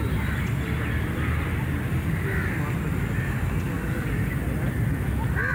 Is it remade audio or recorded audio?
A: recorded